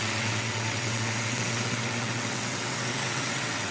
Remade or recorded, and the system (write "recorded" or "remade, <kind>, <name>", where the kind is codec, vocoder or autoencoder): remade, vocoder, WaveNeXt